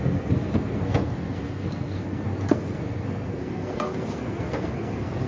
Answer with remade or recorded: remade